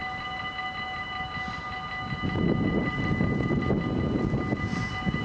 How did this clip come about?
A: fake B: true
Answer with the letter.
B